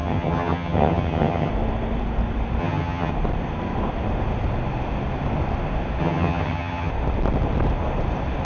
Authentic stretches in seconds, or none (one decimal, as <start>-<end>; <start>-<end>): 1.5-2.6; 3.1-6.0; 6.9-8.4